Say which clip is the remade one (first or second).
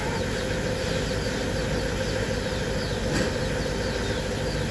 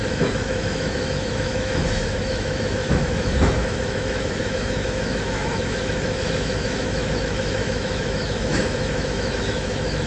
second